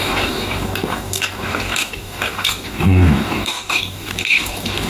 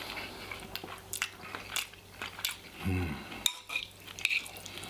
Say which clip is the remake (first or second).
first